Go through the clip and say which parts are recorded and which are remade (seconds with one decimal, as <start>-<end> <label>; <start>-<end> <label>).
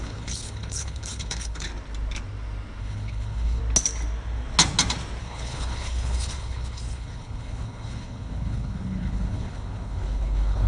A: 0.0-1.7 remade; 1.7-2.8 recorded; 2.8-3.6 remade; 3.6-5.2 recorded; 5.2-10.7 remade